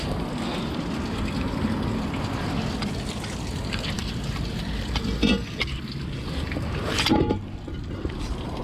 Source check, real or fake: real